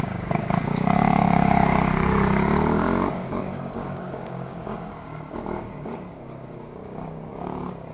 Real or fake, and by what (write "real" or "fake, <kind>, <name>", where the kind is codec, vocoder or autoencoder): fake, codec, DAC